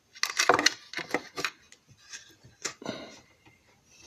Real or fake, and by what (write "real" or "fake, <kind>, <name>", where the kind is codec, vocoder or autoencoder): real